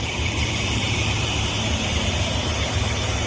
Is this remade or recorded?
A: remade